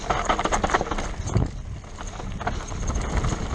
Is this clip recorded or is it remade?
recorded